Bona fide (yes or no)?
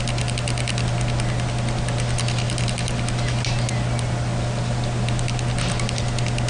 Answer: yes